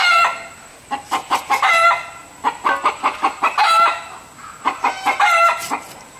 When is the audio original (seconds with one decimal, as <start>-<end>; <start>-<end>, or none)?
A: 0.0-6.2